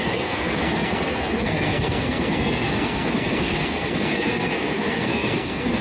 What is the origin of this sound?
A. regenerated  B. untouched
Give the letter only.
A